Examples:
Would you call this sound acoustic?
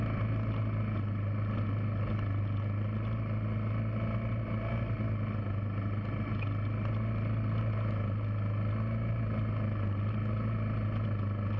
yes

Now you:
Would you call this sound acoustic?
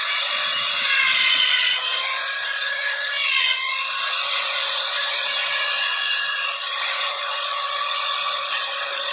no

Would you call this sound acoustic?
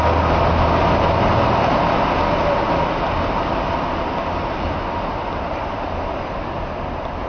yes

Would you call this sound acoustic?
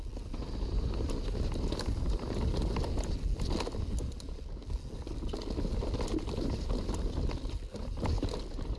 yes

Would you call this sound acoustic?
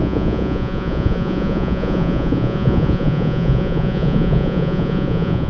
no